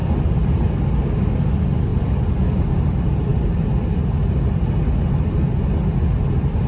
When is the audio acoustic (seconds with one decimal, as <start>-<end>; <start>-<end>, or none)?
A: 1.1-1.9; 2.7-6.7